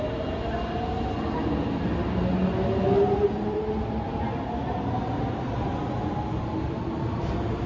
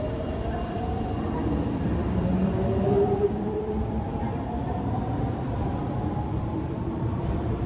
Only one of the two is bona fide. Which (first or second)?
first